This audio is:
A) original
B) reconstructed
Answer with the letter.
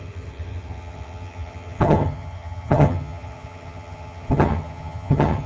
B